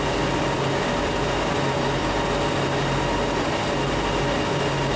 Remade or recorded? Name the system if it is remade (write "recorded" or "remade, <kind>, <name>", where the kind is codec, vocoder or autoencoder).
recorded